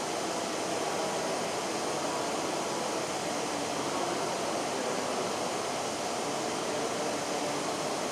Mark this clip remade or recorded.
recorded